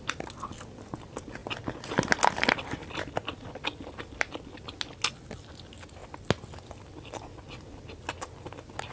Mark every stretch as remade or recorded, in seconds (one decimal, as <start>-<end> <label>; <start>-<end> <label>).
0.0-8.9 recorded